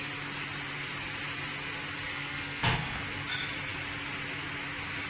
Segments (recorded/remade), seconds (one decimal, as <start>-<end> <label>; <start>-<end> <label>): 0.0-2.1 recorded; 2.1-3.0 remade; 3.0-5.1 recorded